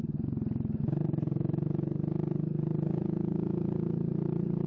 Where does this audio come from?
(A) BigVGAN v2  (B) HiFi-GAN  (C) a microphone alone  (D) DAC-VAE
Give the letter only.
C